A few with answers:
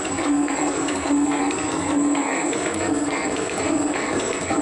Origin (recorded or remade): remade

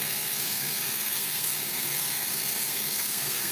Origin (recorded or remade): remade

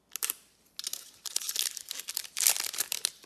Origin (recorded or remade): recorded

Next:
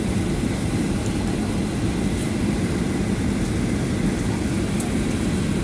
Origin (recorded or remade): recorded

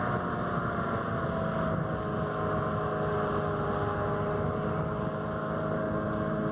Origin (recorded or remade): recorded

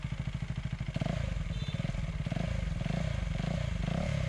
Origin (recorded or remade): recorded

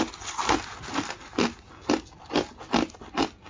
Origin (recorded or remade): recorded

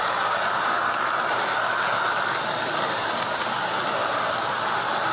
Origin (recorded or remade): recorded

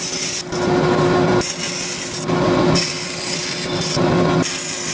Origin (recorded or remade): recorded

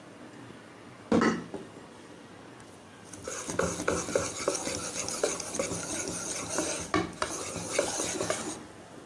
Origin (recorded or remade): recorded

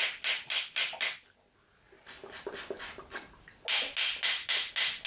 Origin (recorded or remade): recorded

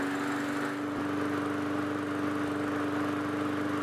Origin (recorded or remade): recorded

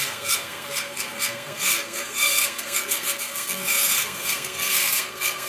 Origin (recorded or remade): remade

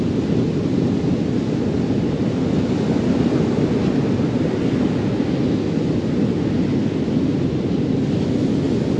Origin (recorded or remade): recorded